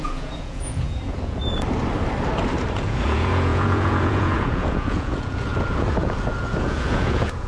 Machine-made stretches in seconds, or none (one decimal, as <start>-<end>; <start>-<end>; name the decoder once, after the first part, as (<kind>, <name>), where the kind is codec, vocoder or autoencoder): 0.0-1.4 (vocoder, Vocos); 2.7-7.5